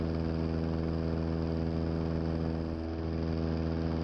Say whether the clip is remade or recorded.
recorded